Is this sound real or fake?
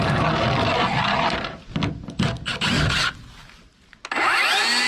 real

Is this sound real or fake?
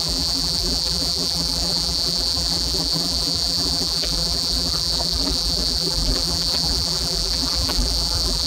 fake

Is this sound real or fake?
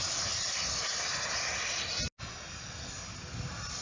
real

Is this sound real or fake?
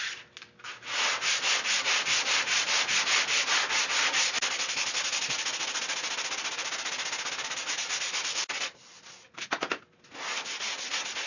real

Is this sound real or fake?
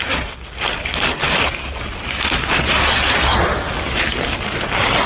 real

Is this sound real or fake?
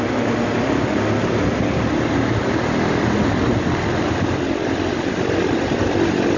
real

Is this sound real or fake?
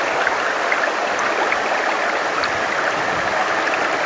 real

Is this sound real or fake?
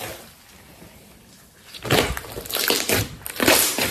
real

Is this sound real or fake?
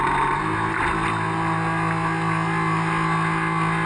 real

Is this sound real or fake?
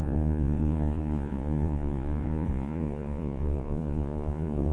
fake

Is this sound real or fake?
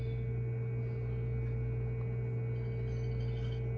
real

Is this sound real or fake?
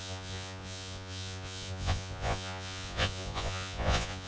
fake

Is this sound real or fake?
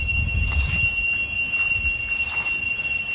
real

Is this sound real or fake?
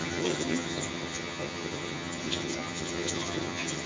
fake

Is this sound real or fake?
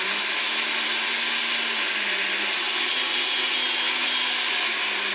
real